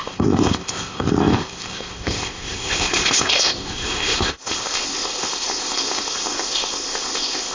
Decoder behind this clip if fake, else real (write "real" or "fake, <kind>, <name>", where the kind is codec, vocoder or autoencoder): fake, codec, ZipCodec